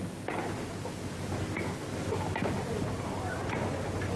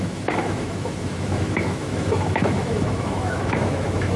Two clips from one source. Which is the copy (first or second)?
second